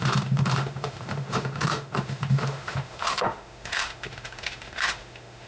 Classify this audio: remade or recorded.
remade